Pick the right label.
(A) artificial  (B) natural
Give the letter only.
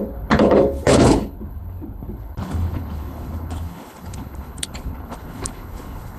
A